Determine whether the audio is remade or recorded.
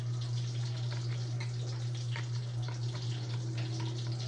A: recorded